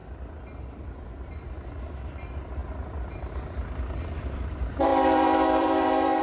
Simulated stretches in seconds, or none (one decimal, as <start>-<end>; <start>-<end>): 1.0-6.2